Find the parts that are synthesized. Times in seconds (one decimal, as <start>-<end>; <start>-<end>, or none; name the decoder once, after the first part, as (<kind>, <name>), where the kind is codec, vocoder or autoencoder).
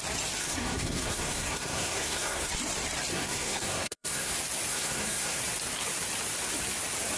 0.4-2.5 (codec, SNAC); 3.1-4.3; 4.7-5.4